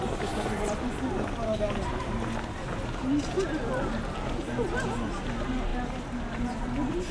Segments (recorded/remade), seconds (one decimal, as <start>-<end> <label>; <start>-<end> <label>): 0.0-7.1 recorded